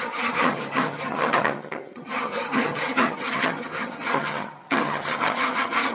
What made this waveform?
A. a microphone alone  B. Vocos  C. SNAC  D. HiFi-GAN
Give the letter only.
D